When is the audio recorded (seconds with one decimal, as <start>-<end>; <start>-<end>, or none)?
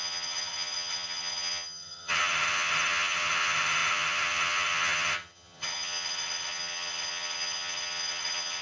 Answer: none